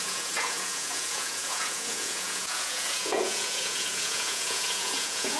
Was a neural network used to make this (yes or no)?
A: yes